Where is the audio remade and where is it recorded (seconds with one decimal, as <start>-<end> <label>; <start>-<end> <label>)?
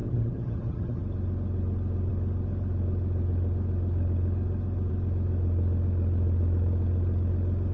0.0-1.0 remade; 1.0-7.7 recorded